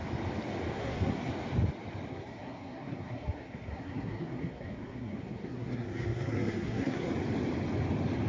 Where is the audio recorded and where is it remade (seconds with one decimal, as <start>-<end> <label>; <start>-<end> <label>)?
0.0-0.7 recorded; 0.7-1.3 remade; 1.3-2.1 recorded; 2.1-7.1 remade; 7.1-8.3 recorded